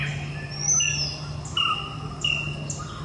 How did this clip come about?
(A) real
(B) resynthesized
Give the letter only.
A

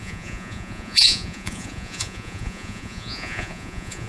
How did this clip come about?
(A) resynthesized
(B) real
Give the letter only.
A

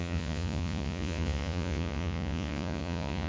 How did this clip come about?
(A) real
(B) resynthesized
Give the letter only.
B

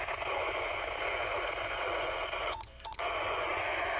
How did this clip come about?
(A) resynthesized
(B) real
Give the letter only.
A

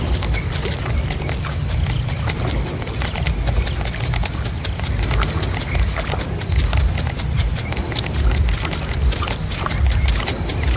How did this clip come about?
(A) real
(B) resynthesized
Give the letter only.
A